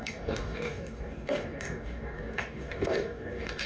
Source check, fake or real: fake